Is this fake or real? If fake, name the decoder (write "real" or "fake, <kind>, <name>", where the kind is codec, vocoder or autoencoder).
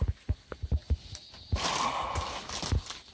real